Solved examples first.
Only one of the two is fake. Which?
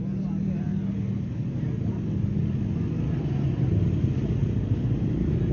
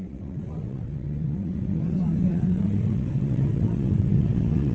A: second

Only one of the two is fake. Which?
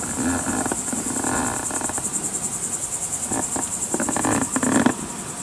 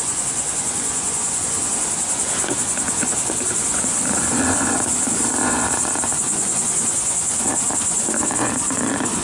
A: second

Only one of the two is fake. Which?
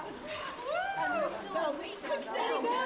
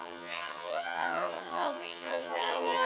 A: second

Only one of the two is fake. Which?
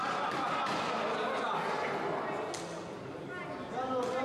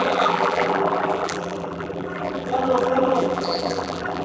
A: second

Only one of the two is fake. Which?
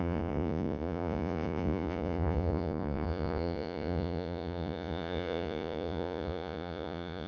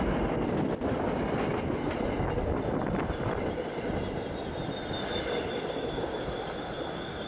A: first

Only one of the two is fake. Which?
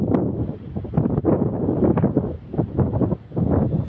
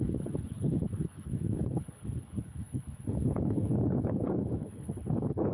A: second